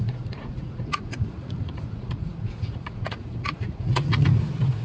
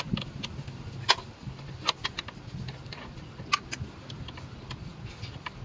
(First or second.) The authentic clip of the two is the second